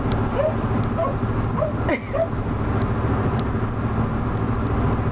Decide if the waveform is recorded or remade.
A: recorded